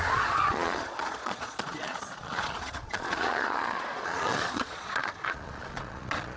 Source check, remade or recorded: remade